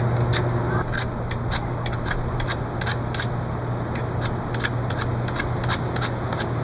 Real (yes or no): yes